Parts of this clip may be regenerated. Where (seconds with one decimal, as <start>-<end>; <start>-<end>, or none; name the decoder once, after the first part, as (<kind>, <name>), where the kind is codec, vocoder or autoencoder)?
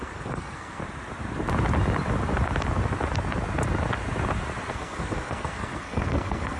0.0-0.8 (codec, SNAC); 4.7-6.6